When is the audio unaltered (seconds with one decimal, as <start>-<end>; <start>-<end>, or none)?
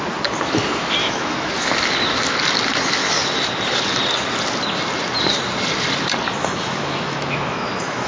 0.0-1.0; 1.5-6.4